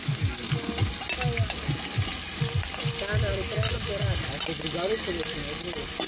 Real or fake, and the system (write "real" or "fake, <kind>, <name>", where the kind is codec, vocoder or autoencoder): real